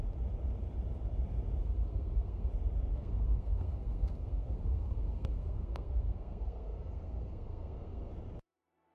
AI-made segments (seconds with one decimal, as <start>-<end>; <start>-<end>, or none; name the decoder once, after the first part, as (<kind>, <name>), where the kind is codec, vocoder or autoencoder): 1.6-2.5 (codec, SNAC); 2.9-8.1